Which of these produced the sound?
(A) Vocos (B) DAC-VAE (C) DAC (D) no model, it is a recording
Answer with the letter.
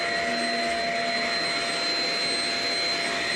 D